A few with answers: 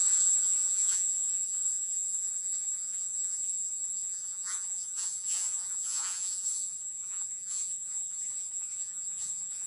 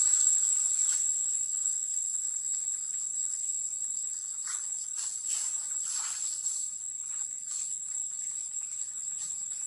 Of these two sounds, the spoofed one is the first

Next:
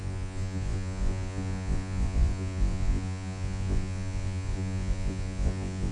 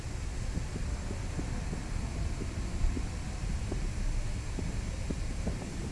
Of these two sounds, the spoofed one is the first